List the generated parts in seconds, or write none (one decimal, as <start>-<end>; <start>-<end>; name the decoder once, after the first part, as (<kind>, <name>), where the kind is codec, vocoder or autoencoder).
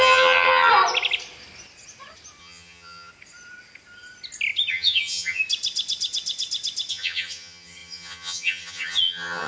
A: 0.0-0.7 (vocoder, HiFi-GAN); 2.4-3.1; 4.7-5.4; 6.9-9.5